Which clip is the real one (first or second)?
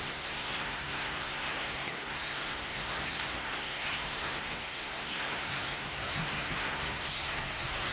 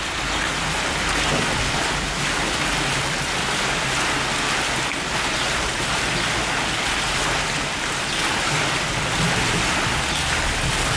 second